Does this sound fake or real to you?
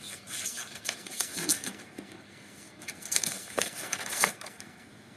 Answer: fake